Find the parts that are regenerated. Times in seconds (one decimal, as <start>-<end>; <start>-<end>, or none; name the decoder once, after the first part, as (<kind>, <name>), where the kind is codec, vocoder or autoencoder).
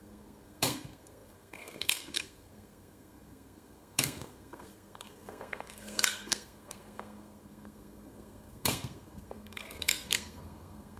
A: 0.0-11.0 (codec, SNAC)